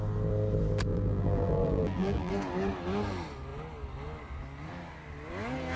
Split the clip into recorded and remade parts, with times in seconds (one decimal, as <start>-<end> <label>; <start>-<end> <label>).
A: 0.0-0.9 recorded; 0.9-2.3 remade; 2.3-5.8 recorded

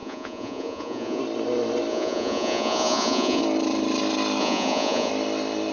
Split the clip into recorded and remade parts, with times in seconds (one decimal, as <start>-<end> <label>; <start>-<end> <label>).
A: 0.0-1.2 remade; 1.2-1.9 recorded; 1.9-3.4 remade; 3.4-4.4 recorded; 4.4-5.1 remade; 5.1-5.7 recorded

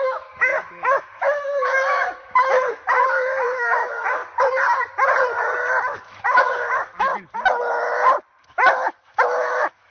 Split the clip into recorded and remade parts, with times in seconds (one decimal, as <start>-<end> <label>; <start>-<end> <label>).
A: 0.0-4.2 remade; 4.2-5.8 recorded; 5.8-7.1 remade; 7.1-8.4 recorded; 8.4-9.9 remade

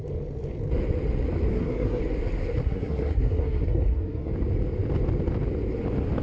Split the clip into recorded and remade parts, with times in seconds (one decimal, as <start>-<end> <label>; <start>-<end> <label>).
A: 0.0-1.5 recorded; 1.5-2.0 remade; 2.0-2.6 recorded; 2.6-4.3 remade; 4.3-6.2 recorded

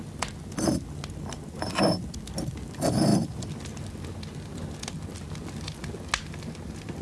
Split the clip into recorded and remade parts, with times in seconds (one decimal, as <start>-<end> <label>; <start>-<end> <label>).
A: 0.0-7.0 recorded

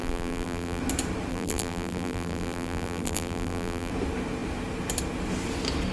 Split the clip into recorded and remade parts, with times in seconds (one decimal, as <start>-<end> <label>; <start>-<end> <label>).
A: 0.0-0.8 remade; 0.8-1.3 recorded; 1.3-3.9 remade; 3.9-5.9 recorded

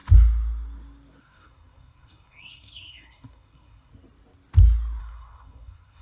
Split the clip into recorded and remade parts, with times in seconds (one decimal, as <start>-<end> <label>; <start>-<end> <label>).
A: 0.0-1.2 recorded; 1.2-3.9 remade; 3.9-5.0 recorded; 5.0-6.0 remade

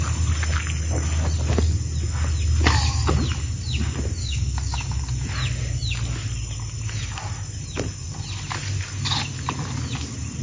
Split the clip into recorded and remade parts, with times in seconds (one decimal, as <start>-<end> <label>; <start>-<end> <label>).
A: 0.0-4.2 recorded; 4.2-5.0 remade; 5.0-10.4 recorded